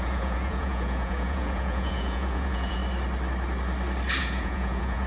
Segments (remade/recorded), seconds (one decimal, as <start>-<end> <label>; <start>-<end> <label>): 0.0-2.8 remade; 2.8-4.2 recorded; 4.2-5.1 remade